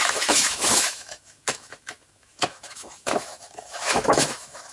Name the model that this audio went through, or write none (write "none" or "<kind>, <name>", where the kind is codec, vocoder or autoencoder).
autoencoder, DAC-VAE